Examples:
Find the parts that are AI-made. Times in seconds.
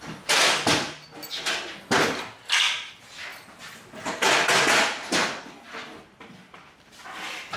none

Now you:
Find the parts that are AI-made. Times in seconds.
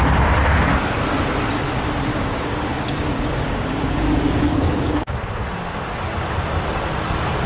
2.1-5.1 (codec, DAC)